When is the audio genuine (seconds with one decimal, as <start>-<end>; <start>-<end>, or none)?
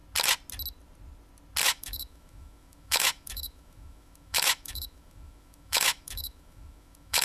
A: 0.0-1.6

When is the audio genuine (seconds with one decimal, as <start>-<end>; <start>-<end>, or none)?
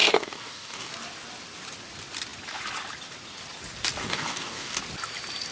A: 0.9-4.0; 4.8-5.5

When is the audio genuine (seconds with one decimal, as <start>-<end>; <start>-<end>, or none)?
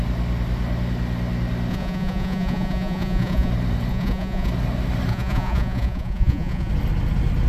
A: 0.0-1.7; 3.5-3.9; 4.5-5.1; 6.7-7.5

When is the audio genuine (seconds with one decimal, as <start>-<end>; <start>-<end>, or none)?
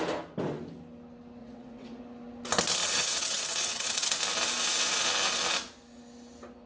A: 0.0-1.4; 2.0-2.8; 4.2-6.7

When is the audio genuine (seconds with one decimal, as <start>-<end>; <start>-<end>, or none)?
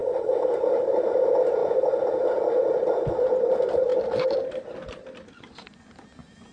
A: 0.0-6.5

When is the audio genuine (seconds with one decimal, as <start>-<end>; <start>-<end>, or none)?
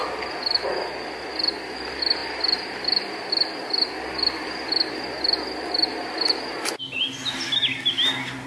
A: 0.0-8.5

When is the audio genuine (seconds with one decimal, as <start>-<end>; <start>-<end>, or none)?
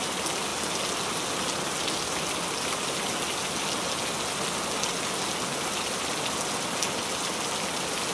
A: 0.0-8.1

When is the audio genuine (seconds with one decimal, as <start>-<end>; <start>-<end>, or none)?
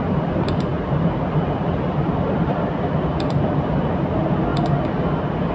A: 0.0-5.5